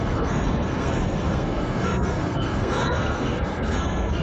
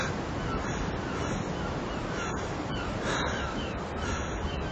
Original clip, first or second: second